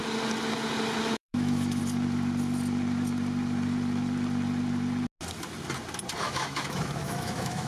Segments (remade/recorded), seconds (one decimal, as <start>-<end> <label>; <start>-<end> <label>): 0.0-1.1 recorded; 1.1-1.8 remade; 1.8-6.2 recorded; 6.2-7.7 remade